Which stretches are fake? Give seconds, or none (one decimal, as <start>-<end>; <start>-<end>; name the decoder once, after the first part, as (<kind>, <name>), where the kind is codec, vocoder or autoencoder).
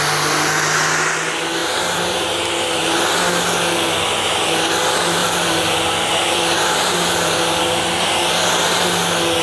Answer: 1.6-3.0 (vocoder, BigVGAN v2); 5.2-8.8